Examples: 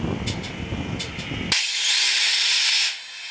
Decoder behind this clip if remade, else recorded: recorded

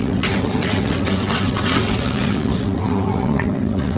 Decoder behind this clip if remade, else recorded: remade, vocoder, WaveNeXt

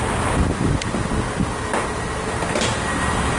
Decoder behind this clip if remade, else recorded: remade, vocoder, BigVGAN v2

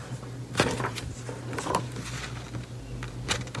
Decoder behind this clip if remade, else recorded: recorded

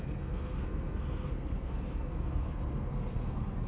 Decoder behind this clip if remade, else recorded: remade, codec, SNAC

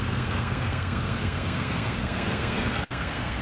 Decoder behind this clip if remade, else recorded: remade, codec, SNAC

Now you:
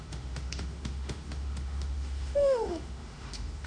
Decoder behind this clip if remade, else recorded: remade, autoencoder, DAC-VAE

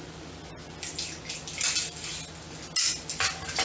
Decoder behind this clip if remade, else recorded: recorded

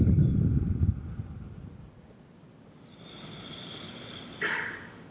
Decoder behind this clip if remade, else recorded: recorded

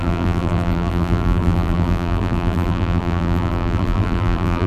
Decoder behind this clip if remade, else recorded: remade, vocoder, BigVGAN v2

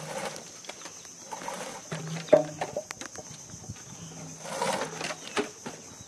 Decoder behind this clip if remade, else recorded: recorded